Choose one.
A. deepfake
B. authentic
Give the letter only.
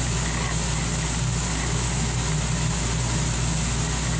B